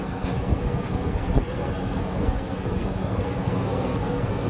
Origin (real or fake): fake